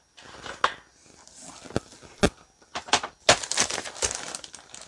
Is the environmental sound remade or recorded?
recorded